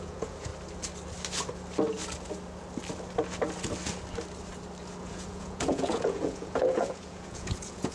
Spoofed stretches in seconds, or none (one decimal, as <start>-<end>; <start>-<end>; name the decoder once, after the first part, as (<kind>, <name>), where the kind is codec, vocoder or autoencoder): 0.0-0.5 (vocoder, Vocos); 5.0-7.9